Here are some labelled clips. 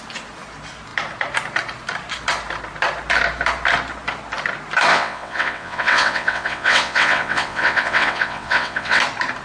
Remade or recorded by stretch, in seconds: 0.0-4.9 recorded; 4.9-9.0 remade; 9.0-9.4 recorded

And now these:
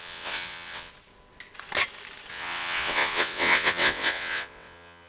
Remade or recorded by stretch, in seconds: 0.0-0.9 remade; 0.9-2.3 recorded; 2.3-5.1 remade

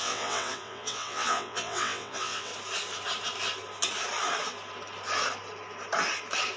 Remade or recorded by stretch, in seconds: 0.0-2.5 remade; 2.5-6.6 recorded

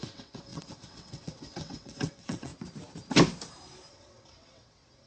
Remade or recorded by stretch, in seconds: 0.0-2.5 remade; 2.5-3.9 recorded; 3.9-5.1 remade

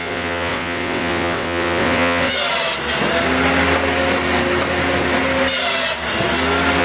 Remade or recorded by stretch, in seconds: 0.0-2.3 remade; 2.3-6.8 recorded

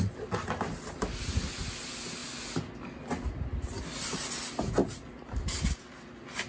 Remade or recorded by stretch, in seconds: 0.0-6.5 recorded